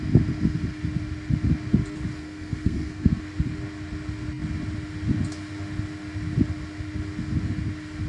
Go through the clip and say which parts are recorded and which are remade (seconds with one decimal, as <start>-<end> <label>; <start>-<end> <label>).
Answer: 0.0-2.2 recorded; 2.2-3.2 remade; 3.2-8.1 recorded